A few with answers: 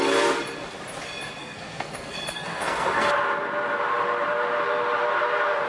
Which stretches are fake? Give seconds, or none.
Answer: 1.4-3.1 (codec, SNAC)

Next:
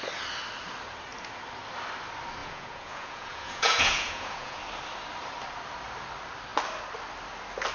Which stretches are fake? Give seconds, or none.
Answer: 2.4-4.6 (vocoder, Vocos)

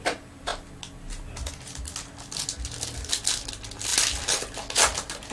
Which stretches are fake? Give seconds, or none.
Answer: none

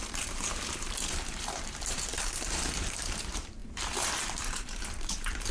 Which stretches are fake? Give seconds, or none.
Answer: 0.0-5.5 (vocoder, BigVGAN v2)

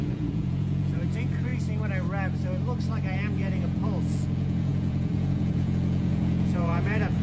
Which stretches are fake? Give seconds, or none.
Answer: 0.0-1.5 (vocoder, Vocos); 3.3-7.2

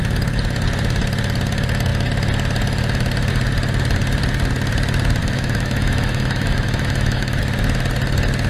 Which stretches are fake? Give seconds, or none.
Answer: 5.2-7.4 (autoencoder, DAC-VAE)

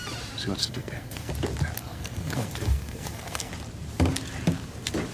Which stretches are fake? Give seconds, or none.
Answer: 0.6-1.3 (codec, SNAC); 1.8-3.5